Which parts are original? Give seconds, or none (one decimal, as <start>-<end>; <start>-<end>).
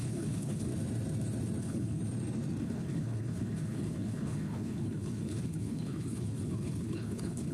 0.7-1.6; 2.0-2.6